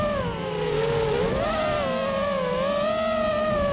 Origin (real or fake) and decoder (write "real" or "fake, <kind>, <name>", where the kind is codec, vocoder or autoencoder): real